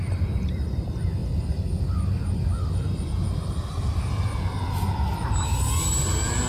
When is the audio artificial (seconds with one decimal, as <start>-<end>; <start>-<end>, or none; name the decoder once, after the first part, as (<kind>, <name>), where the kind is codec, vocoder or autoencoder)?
none